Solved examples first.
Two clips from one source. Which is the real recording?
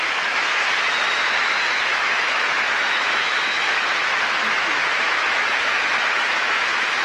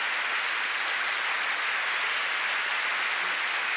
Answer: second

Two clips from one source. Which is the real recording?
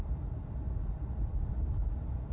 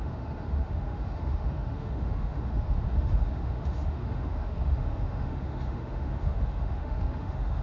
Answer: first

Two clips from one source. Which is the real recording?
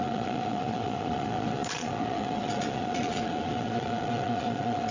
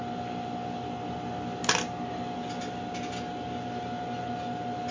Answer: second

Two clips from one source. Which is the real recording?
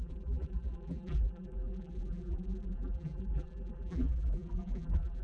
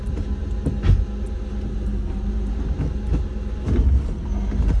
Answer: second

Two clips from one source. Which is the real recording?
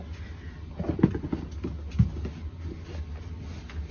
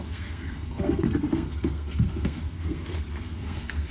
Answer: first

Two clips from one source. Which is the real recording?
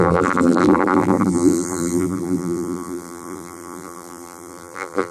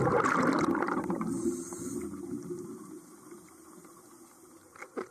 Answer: second